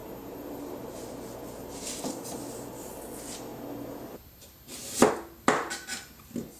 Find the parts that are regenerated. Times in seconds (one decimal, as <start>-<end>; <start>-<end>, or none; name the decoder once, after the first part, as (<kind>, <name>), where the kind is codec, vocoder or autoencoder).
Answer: 0.0-2.0 (vocoder, BigVGAN v2)